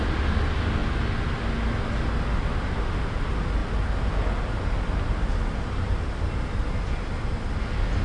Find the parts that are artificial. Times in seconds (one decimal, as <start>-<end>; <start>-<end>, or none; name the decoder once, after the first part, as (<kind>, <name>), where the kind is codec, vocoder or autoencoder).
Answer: none